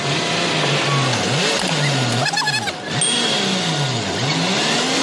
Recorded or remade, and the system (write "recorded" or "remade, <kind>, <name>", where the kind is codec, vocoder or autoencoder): recorded